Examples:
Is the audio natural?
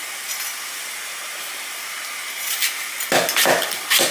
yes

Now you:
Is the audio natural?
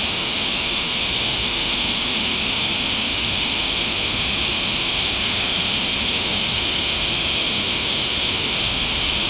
no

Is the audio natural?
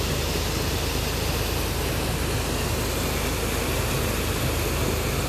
yes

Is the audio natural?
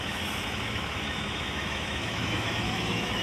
no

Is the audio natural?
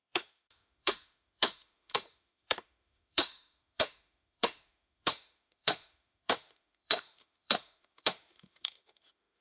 no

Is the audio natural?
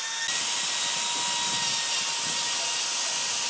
yes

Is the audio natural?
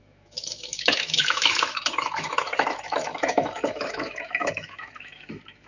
no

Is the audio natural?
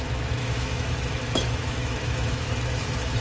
no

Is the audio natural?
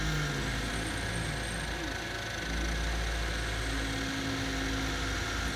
yes